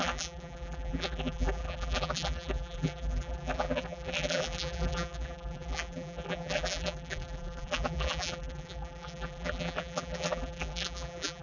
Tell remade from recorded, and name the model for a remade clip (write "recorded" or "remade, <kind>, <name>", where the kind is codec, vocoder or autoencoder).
remade, vocoder, BigVGAN v2